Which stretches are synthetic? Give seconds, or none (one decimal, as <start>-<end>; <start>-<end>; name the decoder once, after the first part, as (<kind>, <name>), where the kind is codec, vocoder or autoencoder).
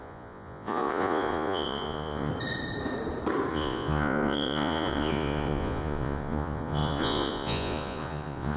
0.0-2.3 (vocoder, Vocos); 3.5-8.6